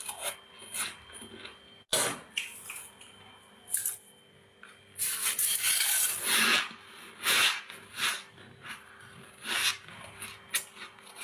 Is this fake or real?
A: real